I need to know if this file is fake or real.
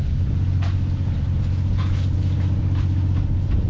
real